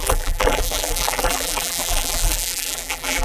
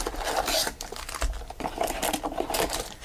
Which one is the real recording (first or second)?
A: second